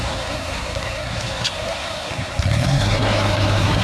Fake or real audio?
fake